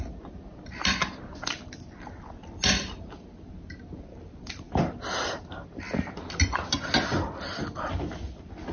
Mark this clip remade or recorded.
recorded